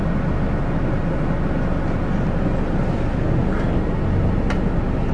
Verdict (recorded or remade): recorded